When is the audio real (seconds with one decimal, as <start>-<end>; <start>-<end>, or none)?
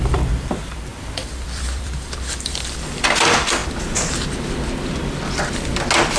3.6-6.2